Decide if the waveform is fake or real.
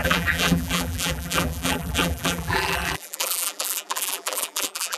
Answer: fake